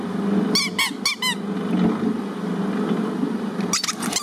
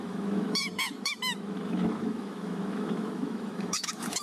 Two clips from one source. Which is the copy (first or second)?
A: second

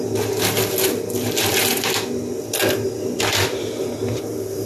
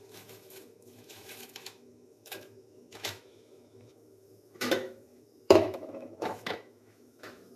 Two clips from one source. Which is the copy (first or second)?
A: second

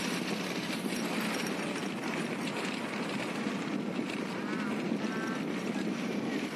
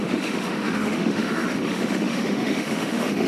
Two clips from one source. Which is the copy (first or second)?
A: second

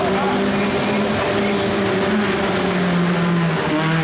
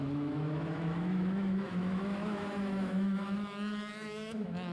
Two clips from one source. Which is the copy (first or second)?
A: second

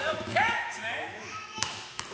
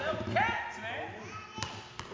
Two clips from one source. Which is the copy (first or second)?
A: first